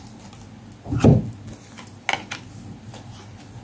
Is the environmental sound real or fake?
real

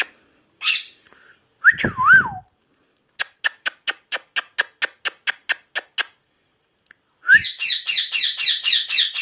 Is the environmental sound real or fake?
real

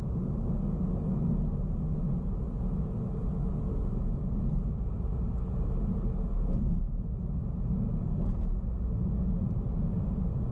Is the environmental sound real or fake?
real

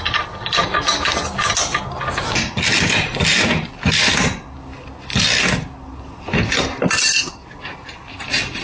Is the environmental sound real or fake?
real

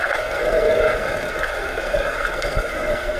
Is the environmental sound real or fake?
fake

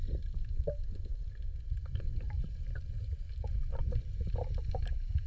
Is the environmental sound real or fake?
fake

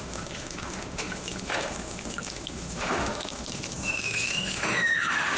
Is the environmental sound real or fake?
fake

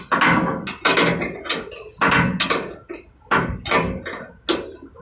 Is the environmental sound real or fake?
real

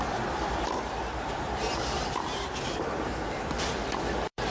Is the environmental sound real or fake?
fake